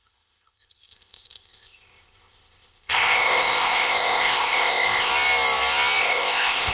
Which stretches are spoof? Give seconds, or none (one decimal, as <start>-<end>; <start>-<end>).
0.0-5.1; 6.0-6.7